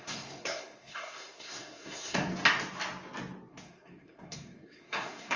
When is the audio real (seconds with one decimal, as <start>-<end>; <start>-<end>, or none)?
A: 2.3-3.5